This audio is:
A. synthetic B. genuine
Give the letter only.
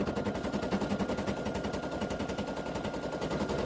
B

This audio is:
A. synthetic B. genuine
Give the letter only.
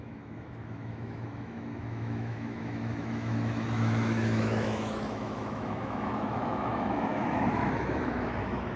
A